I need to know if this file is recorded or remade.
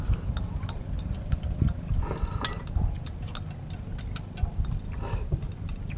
recorded